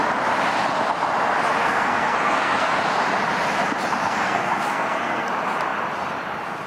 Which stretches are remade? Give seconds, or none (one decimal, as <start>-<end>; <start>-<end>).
1.6-2.8; 4.0-5.3